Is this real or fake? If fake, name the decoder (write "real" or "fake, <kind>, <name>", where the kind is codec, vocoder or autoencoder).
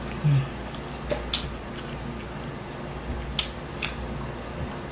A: real